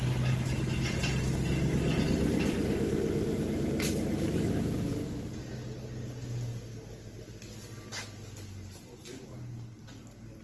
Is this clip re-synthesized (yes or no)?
no